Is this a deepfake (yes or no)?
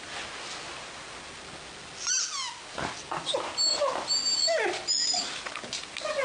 no